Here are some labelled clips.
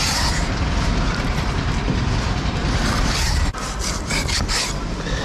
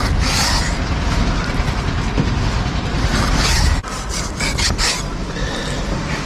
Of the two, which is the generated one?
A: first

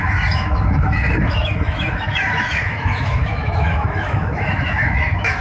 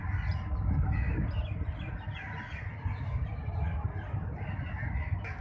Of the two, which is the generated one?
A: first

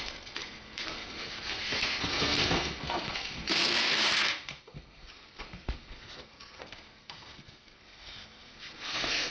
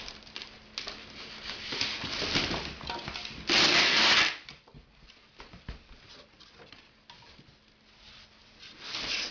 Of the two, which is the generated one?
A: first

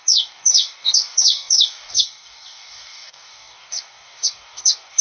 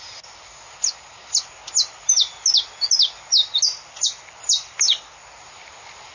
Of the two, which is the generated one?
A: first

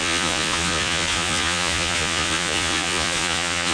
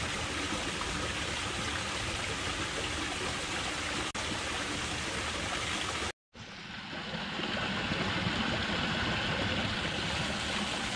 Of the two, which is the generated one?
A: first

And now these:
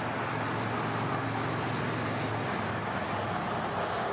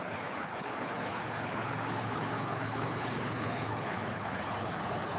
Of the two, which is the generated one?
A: second